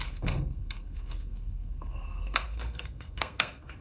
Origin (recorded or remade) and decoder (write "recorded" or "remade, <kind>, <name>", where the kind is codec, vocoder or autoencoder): remade, codec, SNAC